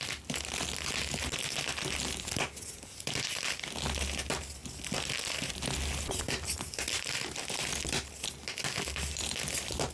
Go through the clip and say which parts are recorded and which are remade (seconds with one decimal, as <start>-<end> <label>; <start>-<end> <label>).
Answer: 0.0-9.9 recorded